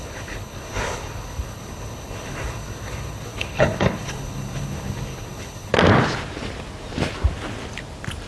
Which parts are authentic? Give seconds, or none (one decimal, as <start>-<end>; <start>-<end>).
5.7-8.3